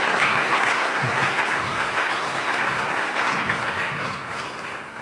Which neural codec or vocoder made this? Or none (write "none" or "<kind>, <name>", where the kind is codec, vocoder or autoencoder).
codec, SNAC